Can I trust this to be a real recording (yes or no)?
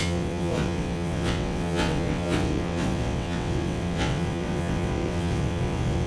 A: no